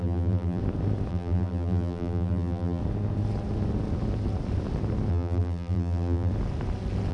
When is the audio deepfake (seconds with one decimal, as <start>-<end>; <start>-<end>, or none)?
0.0-0.6; 1.1-2.8; 5.1-6.3